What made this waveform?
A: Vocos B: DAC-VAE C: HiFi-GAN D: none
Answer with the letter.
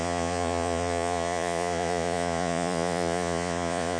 A